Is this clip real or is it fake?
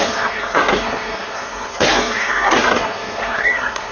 fake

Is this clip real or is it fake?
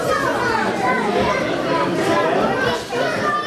real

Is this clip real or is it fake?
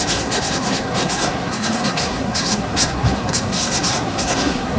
fake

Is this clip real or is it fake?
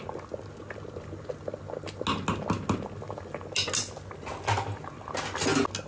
real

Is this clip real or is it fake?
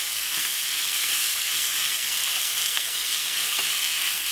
fake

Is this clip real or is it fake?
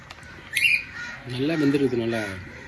real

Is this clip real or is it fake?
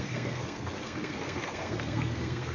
fake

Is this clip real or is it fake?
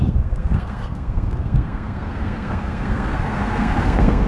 fake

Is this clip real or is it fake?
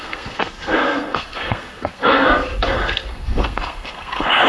fake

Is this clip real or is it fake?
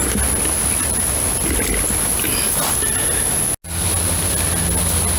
real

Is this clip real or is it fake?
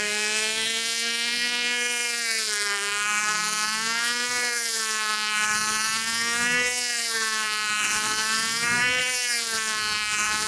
fake